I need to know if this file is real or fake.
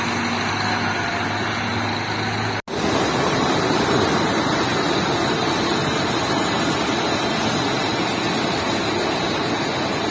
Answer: real